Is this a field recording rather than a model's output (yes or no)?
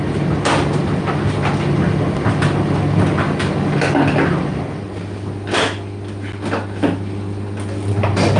yes